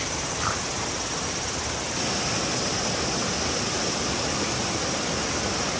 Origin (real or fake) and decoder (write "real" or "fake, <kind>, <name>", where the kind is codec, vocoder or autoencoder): real